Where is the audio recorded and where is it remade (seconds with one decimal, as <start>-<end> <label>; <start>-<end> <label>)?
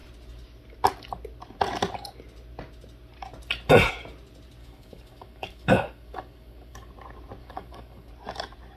0.0-4.6 recorded; 4.6-6.9 remade; 6.9-7.4 recorded; 7.4-8.1 remade; 8.1-8.8 recorded